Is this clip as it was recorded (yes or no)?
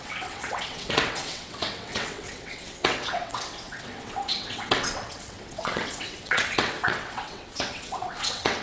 no